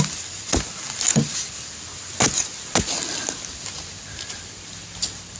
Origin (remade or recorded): recorded